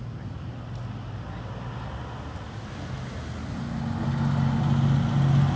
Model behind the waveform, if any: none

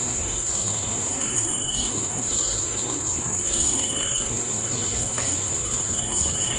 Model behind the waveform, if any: codec, SNAC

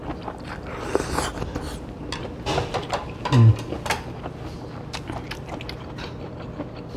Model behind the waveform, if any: none